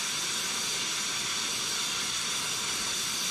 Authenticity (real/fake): real